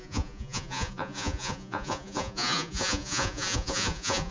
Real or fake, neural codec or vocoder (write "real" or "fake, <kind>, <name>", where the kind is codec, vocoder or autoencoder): fake, vocoder, Vocos